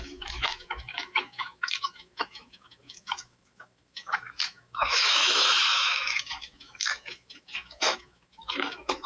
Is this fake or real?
fake